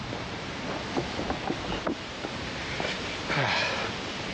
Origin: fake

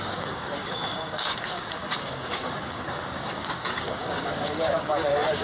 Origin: fake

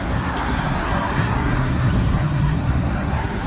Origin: fake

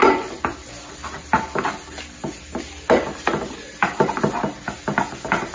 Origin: real